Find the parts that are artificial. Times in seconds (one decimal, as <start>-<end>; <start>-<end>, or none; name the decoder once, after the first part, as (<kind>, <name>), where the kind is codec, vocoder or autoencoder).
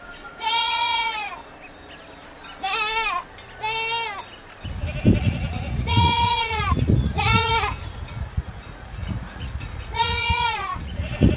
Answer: 0.0-1.3 (vocoder, Vocos); 5.2-7.5; 8.1-11.4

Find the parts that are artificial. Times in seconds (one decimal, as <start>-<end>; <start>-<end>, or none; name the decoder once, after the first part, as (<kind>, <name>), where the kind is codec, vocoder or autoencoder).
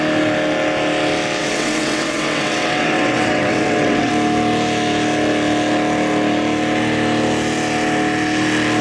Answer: 1.4-4.1 (vocoder, WaveNeXt)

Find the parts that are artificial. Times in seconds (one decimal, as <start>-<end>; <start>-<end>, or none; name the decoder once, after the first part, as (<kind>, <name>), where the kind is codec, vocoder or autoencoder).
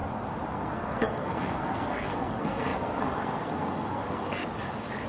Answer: 0.5-4.4 (codec, SNAC)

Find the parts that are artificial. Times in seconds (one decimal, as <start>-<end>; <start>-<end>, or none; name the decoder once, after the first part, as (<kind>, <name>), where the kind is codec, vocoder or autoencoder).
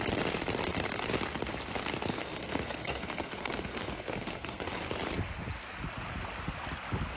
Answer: 2.1-4.8 (codec, SNAC)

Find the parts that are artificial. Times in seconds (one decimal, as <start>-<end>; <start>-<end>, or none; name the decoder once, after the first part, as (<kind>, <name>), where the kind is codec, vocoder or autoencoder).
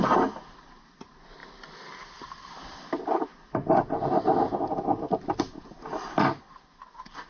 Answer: 1.4-5.4 (vocoder, BigVGAN v2)